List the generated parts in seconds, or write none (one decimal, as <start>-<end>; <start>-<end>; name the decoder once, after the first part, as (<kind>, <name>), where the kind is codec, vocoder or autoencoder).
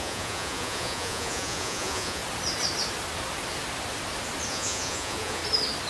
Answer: 0.0-2.2 (vocoder, Vocos); 4.5-5.4